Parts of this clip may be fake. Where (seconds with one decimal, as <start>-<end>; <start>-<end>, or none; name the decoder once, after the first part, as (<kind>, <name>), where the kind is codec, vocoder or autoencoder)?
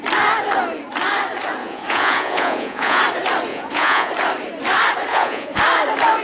1.6-3.0 (vocoder, Vocos); 3.5-4.1; 5.1-5.6